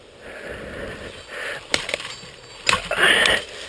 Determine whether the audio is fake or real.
real